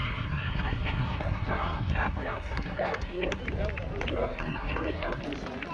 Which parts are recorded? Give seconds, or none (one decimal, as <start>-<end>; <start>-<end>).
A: 3.4-4.1; 5.2-5.7